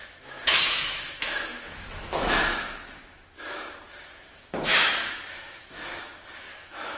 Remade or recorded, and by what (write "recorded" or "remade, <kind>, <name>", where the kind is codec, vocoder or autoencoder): remade, autoencoder, DAC-VAE